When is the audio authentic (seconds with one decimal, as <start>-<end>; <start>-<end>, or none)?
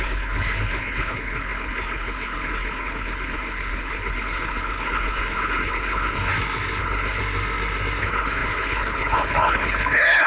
6.3-6.8; 7.2-8.0